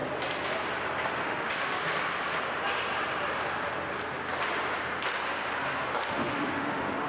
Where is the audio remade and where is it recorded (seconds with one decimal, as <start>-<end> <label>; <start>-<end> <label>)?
0.0-1.2 recorded; 1.2-1.8 remade; 1.8-6.1 recorded; 6.1-7.1 remade